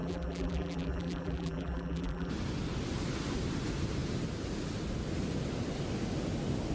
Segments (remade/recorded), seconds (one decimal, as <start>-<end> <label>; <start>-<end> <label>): 0.0-2.3 remade; 2.3-6.7 recorded